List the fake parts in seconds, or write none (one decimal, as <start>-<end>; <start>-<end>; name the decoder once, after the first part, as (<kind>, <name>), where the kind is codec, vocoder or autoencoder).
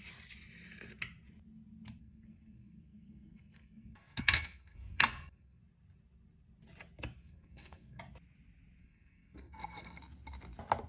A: 2.0-5.6 (codec, SNAC); 7.2-8.0; 8.8-10.0